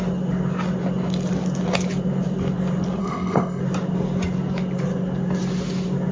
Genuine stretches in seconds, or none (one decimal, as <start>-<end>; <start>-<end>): 0.0-3.0; 3.6-6.1